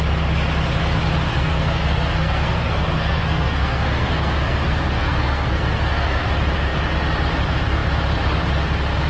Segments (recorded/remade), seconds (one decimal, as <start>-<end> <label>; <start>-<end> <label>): 0.0-1.3 recorded; 1.3-6.3 remade; 6.3-9.1 recorded